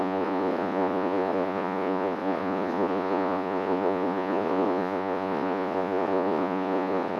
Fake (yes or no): yes